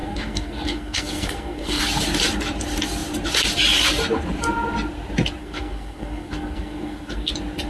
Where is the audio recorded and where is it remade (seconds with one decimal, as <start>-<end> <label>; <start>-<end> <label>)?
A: 0.0-1.8 remade; 1.8-5.4 recorded; 5.4-7.3 remade; 7.3-7.7 recorded